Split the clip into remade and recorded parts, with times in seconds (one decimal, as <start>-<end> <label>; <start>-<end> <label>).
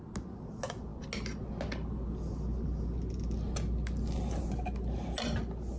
0.0-5.8 recorded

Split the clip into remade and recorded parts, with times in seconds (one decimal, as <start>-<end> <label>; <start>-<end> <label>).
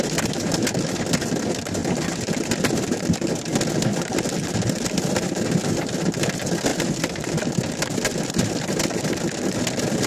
0.0-1.8 recorded; 1.8-3.3 remade; 3.3-6.7 recorded; 6.7-7.4 remade; 7.4-10.1 recorded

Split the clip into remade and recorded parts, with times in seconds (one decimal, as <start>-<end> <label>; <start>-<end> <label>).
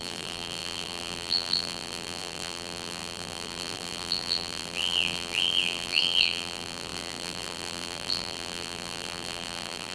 0.0-9.9 remade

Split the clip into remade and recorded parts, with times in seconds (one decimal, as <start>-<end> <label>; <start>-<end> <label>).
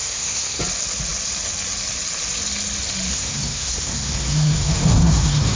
0.0-0.6 remade; 0.6-3.1 recorded; 3.1-5.6 remade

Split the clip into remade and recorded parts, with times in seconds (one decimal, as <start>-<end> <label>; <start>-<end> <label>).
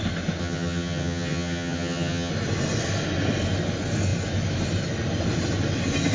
0.0-0.4 recorded; 0.4-2.3 remade; 2.3-6.1 recorded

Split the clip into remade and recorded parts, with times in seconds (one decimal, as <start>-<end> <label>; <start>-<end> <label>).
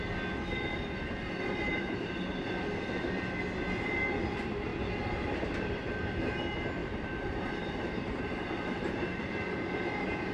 0.0-1.7 recorded; 1.7-2.5 remade; 2.5-6.8 recorded; 6.8-9.2 remade; 9.2-10.3 recorded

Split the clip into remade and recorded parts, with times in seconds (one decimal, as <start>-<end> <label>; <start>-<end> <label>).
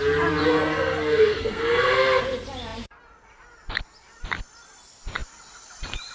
0.0-0.4 recorded; 0.4-2.2 remade; 2.2-6.1 recorded